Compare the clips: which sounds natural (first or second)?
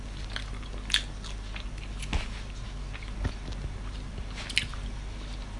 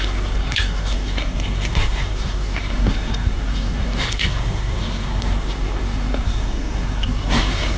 first